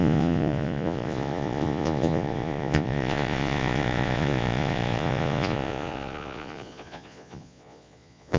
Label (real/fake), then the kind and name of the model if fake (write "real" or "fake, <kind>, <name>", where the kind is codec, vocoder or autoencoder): fake, vocoder, Vocos